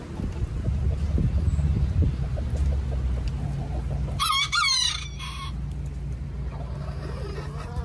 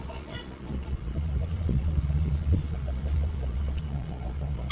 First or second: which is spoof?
second